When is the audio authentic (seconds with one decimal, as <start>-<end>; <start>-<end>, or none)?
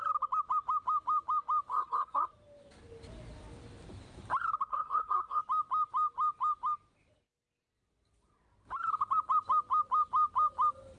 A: 0.0-1.7; 2.3-4.7; 5.4-11.0